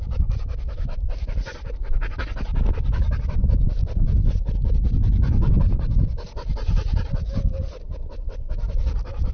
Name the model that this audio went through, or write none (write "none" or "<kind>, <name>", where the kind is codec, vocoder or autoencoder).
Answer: none